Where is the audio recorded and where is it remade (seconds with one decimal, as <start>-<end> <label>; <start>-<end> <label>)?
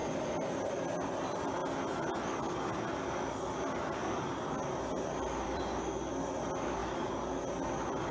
0.0-0.6 recorded; 0.6-1.6 remade; 1.6-5.4 recorded; 5.4-6.8 remade; 6.8-7.5 recorded; 7.5-8.1 remade